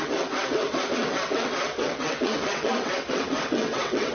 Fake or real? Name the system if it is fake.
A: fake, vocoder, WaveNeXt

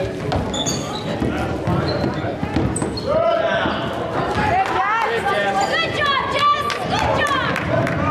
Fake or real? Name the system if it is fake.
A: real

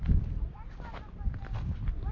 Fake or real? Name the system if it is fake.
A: real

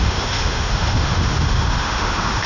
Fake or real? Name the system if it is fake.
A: fake, autoencoder, DAC-VAE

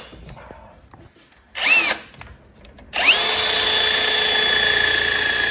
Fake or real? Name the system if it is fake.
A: real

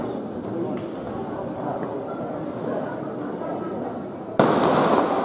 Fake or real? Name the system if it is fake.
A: real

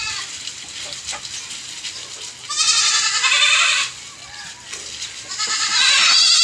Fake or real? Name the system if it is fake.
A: real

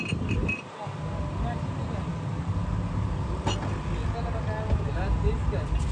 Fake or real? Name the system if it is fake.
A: real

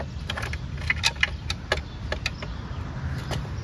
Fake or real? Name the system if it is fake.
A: real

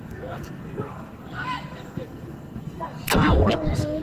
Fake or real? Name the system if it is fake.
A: fake, codec, SNAC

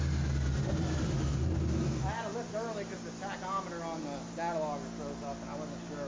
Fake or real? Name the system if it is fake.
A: real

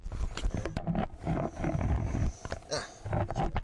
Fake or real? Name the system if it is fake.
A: real